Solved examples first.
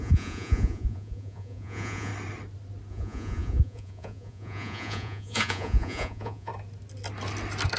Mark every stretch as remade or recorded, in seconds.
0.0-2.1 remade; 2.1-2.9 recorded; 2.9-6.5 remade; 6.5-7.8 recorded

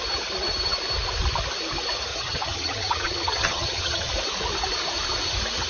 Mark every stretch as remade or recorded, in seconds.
0.0-2.1 recorded; 2.1-4.1 remade; 4.1-5.7 recorded

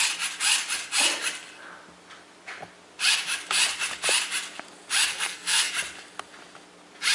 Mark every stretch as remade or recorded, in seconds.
0.0-5.1 recorded; 5.1-5.7 remade; 5.7-7.1 recorded